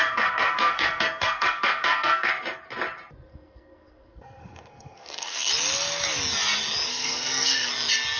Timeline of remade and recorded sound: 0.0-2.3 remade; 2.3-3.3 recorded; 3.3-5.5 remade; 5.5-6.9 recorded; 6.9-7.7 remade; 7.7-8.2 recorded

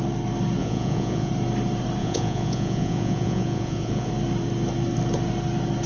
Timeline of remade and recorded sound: 0.0-0.6 recorded; 0.6-1.3 remade; 1.3-2.0 recorded; 2.0-4.1 remade; 4.1-5.9 recorded

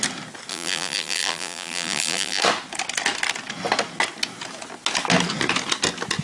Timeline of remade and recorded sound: 0.0-0.5 recorded; 0.5-2.4 remade; 2.4-6.2 recorded

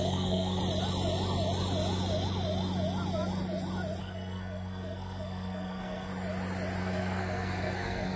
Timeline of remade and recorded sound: 0.0-0.6 remade; 0.6-4.0 recorded; 4.0-6.1 remade; 6.1-6.8 recorded; 6.8-8.2 remade

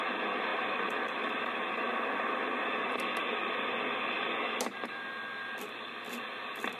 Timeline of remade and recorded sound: 0.0-0.5 recorded; 0.5-2.8 remade; 2.8-6.8 recorded

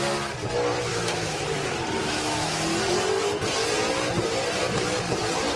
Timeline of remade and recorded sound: 0.0-0.9 recorded; 0.9-1.4 remade; 1.4-2.0 recorded; 2.0-2.6 remade; 2.6-5.6 recorded